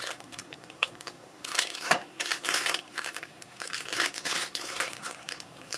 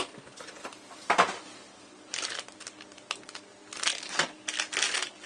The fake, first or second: first